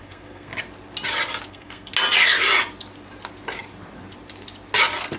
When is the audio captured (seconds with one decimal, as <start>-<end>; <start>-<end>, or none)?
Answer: 0.5-1.5; 1.9-5.2